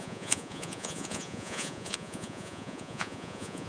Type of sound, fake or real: fake